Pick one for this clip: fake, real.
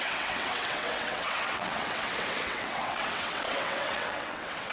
fake